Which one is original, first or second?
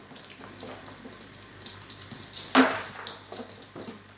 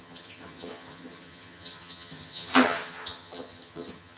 first